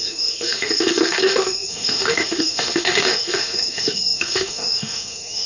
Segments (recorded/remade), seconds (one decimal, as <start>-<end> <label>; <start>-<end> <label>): 0.0-5.5 remade